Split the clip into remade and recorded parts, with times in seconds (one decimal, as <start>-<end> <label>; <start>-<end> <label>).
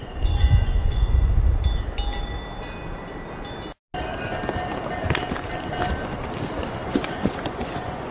0.0-1.3 remade; 1.3-6.8 recorded; 6.8-8.1 remade